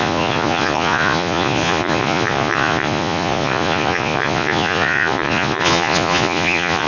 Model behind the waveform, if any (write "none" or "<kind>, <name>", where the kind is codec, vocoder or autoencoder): vocoder, Vocos